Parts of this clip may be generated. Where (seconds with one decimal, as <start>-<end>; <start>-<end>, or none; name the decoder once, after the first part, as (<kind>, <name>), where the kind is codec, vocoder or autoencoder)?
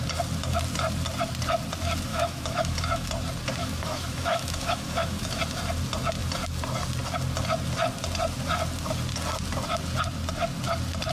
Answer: 2.1-3.1 (autoencoder, DAC-VAE); 3.6-5.4